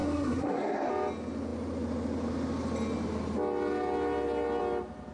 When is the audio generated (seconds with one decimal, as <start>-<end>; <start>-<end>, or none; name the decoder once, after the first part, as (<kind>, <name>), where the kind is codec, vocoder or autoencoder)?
0.0-0.9 (codec, SNAC)